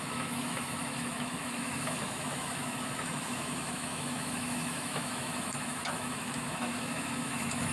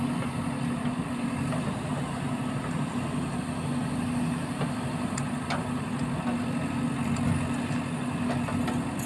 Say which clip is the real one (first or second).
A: second